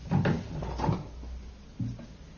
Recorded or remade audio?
recorded